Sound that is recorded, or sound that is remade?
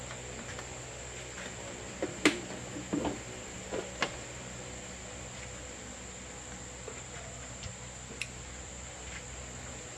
recorded